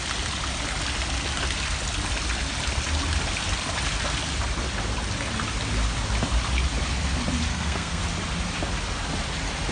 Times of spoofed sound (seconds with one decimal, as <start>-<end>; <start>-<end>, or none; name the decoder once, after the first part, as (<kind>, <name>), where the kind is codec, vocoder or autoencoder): 7.5-8.0 (codec, SNAC)